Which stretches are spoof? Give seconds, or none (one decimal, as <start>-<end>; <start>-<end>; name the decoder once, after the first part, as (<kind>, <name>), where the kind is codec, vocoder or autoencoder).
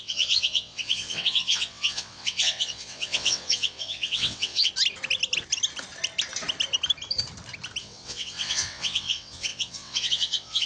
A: 0.0-4.7 (vocoder, WaveNeXt); 7.8-10.7